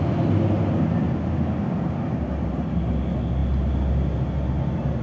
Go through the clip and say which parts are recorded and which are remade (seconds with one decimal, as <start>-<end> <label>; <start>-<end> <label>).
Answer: 0.0-5.0 recorded